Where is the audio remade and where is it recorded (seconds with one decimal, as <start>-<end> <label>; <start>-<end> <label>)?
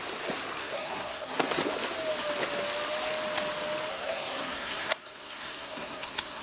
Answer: 0.0-0.6 recorded; 0.6-1.6 remade; 1.6-3.9 recorded; 3.9-6.4 remade